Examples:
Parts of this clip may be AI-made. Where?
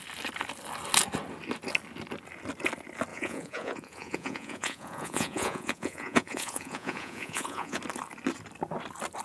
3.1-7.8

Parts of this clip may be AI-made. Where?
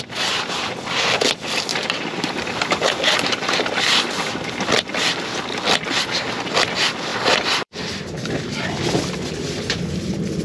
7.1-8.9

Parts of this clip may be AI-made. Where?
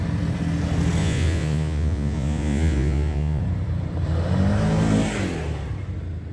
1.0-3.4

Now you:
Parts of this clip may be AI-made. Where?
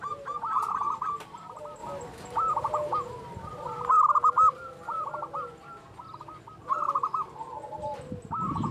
none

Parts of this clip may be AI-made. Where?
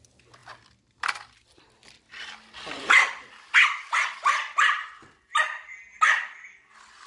none